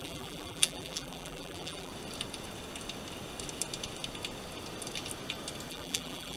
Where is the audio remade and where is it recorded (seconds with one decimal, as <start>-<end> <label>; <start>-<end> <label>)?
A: 0.0-1.9 remade; 1.9-5.7 recorded; 5.7-6.4 remade